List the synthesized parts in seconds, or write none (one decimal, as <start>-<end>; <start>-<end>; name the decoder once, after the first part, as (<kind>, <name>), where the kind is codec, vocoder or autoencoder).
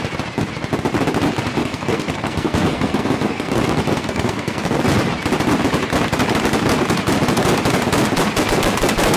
1.6-4.8 (codec, SNAC)